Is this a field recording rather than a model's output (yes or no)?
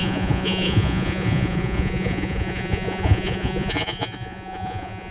no